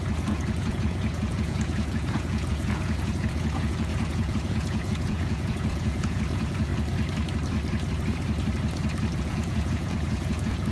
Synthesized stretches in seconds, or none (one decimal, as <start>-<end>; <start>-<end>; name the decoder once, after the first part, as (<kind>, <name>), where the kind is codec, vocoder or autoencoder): 0.0-6.7 (vocoder, Vocos); 9.2-10.7